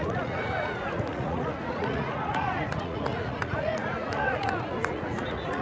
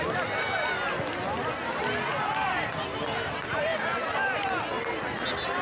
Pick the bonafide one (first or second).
second